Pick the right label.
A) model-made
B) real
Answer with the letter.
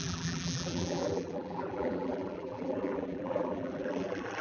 A